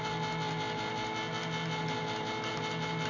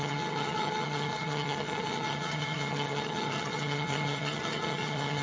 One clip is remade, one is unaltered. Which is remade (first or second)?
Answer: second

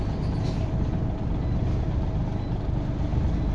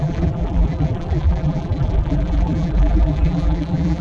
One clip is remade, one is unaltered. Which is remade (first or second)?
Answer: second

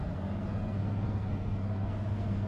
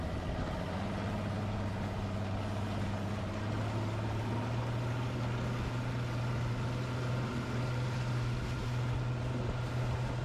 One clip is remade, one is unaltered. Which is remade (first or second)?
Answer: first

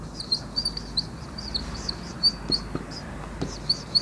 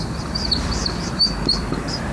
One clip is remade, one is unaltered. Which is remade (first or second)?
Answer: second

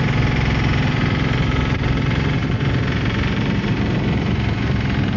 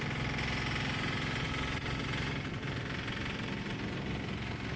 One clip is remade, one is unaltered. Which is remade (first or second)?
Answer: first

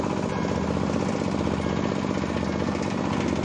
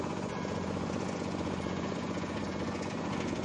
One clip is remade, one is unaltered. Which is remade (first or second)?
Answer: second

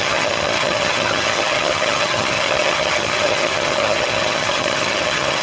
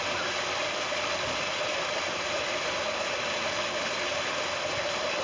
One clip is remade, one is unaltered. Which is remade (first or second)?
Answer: first